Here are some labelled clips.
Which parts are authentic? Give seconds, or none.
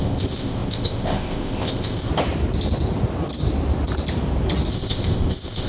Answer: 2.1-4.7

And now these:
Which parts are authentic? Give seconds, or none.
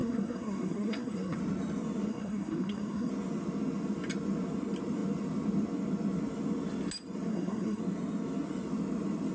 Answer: 1.4-2.1; 3.1-7.3; 7.8-9.3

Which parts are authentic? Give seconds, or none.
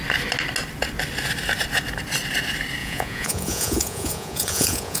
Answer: 0.0-2.8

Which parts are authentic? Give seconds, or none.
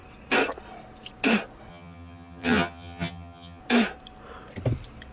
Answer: 0.0-1.7; 3.6-5.1